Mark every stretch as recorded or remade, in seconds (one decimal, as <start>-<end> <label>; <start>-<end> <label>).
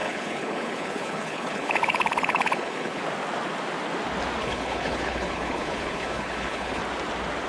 0.0-3.0 remade; 3.0-4.4 recorded; 4.4-6.8 remade; 6.8-7.5 recorded